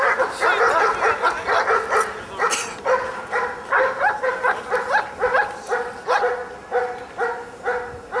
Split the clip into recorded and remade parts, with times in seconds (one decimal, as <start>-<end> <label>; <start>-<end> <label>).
0.0-8.2 recorded